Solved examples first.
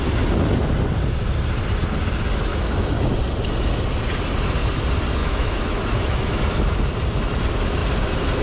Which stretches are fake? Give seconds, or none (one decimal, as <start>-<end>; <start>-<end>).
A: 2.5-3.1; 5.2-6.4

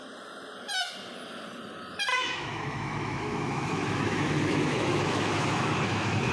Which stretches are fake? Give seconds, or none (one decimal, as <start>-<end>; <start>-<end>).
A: 2.1-6.3

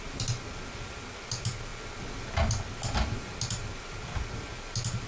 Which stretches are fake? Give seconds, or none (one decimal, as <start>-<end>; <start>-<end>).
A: none

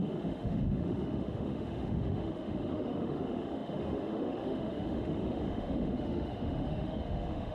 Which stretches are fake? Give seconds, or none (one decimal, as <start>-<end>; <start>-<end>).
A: 0.0-7.5